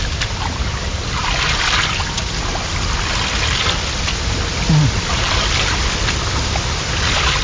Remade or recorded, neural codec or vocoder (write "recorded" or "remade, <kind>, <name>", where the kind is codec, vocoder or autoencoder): recorded